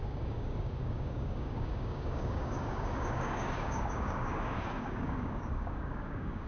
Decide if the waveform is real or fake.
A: fake